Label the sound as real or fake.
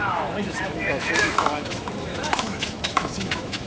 fake